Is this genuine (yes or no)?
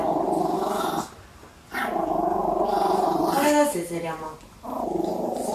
yes